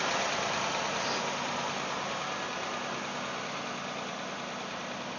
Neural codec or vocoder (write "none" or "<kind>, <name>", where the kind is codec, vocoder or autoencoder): none